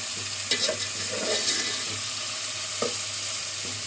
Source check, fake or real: real